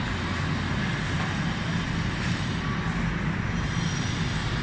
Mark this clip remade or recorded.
recorded